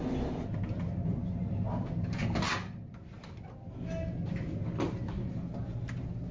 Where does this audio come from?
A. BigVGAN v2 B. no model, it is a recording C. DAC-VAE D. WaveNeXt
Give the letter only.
B